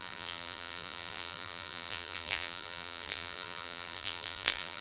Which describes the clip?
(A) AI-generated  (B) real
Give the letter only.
A